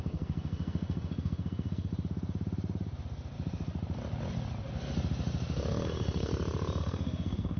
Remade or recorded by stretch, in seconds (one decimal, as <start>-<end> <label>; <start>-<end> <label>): 0.0-1.9 remade; 1.9-5.7 recorded; 5.7-6.3 remade; 6.3-6.8 recorded; 6.8-7.6 remade